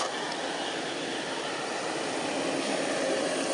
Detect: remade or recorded recorded